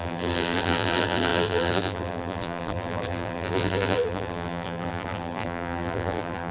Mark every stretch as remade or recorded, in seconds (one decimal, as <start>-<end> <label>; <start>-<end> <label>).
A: 0.0-6.5 remade